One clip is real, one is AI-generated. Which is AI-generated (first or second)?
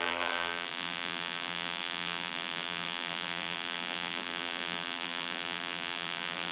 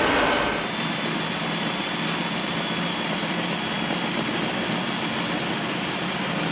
first